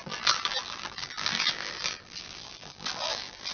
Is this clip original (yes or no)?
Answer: no